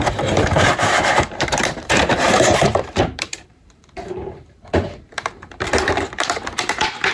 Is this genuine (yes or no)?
no